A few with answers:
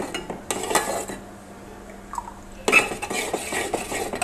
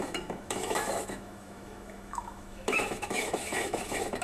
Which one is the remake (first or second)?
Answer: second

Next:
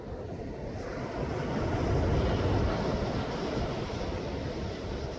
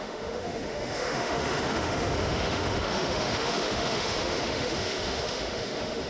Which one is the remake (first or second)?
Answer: second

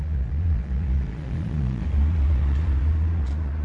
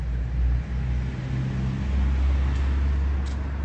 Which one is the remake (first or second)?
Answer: first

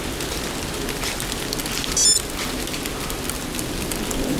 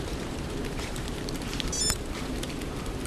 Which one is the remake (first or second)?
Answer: second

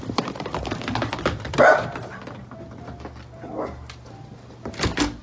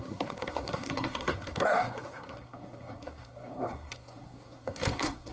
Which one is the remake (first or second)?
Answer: second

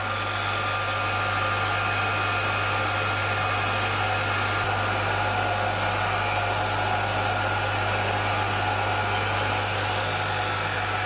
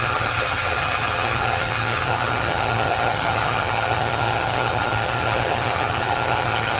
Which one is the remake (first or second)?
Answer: second